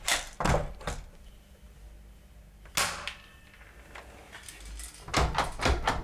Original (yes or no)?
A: yes